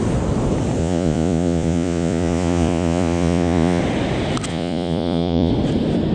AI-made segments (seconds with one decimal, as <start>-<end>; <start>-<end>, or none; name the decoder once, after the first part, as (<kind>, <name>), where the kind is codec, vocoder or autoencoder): 0.8-3.8 (vocoder, Vocos); 4.5-5.5